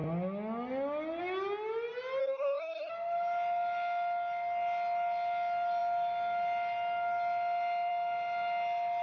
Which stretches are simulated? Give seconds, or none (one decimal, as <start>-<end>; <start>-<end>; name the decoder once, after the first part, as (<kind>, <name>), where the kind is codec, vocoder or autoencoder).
2.2-2.9 (codec, SNAC)